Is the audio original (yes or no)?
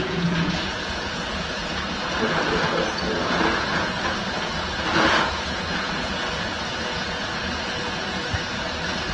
no